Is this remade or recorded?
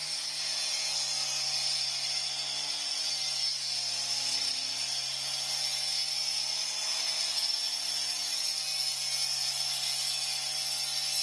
recorded